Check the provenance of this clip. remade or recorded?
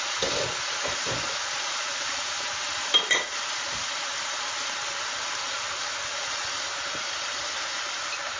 remade